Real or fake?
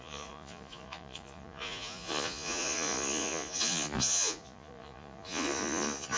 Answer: fake